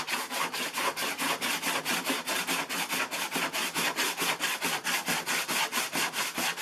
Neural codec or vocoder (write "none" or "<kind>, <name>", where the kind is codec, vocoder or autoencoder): none